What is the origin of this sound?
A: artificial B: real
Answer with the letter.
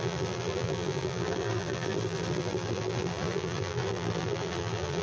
A